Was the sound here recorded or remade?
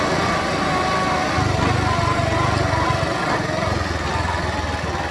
recorded